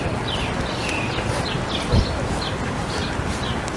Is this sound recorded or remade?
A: recorded